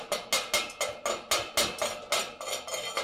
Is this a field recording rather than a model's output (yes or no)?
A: yes